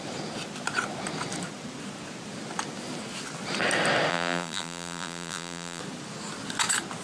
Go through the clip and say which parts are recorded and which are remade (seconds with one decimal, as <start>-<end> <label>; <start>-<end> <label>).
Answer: 0.0-4.1 recorded; 4.1-5.8 remade; 5.8-7.0 recorded